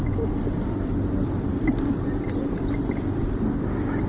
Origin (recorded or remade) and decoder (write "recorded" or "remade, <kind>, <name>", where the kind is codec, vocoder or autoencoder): remade, vocoder, BigVGAN v2